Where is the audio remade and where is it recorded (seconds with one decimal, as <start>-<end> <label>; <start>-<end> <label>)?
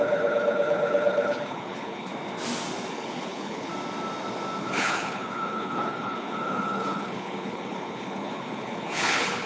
0.0-2.1 remade; 2.1-2.9 recorded; 2.9-3.7 remade; 3.7-4.6 recorded; 4.6-9.5 remade